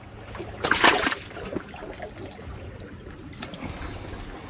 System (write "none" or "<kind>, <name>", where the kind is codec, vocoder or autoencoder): none